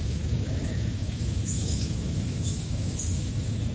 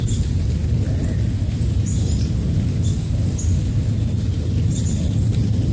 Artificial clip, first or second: first